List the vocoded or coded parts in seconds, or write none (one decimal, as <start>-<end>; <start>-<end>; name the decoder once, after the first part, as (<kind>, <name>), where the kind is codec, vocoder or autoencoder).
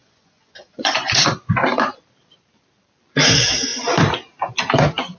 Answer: 0.0-1.2 (vocoder, Vocos)